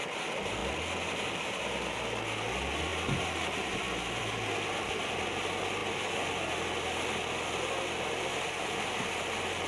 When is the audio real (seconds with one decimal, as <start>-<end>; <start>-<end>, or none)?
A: 0.0-9.7